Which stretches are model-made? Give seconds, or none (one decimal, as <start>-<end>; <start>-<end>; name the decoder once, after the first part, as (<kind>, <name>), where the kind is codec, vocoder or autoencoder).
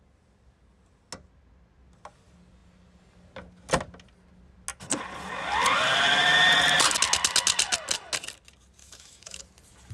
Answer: 8.8-9.4 (autoencoder, DAC-VAE)